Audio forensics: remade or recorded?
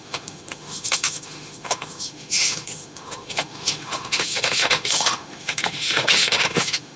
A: remade